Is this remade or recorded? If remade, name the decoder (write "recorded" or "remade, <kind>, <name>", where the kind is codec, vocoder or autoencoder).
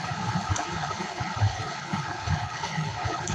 remade, codec, HILCodec